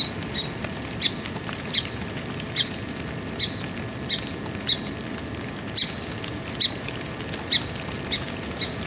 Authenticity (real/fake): real